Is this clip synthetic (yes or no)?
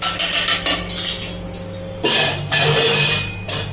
no